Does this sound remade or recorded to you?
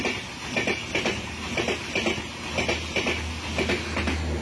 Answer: recorded